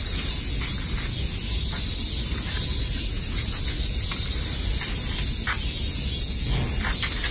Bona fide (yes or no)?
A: yes